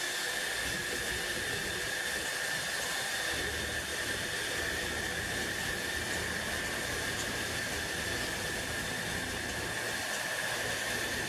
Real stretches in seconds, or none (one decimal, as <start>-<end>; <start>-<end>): 0.0-3.9; 8.8-11.3